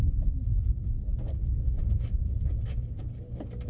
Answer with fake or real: real